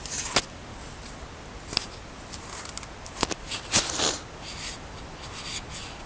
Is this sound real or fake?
real